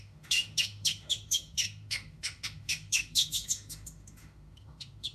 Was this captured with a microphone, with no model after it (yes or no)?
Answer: no